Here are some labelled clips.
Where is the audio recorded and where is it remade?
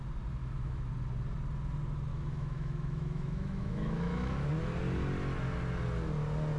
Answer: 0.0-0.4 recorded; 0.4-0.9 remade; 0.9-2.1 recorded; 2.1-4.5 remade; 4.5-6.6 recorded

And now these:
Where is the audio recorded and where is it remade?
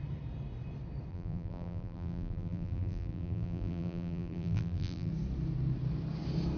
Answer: 0.0-1.1 recorded; 1.1-5.1 remade; 5.1-6.6 recorded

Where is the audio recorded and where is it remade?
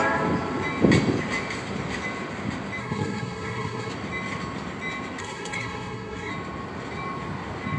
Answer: 0.0-2.8 recorded; 2.8-3.9 remade; 3.9-5.2 recorded; 5.2-6.3 remade; 6.3-7.8 recorded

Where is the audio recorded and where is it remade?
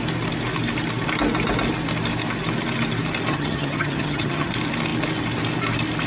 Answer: 0.0-3.3 recorded; 3.3-4.5 remade; 4.5-6.1 recorded